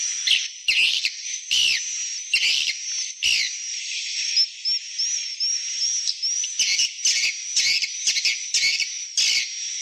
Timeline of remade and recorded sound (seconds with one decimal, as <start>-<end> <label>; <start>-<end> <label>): 0.0-0.9 recorded; 0.9-1.6 remade; 1.6-3.7 recorded; 3.7-4.3 remade; 4.3-9.8 recorded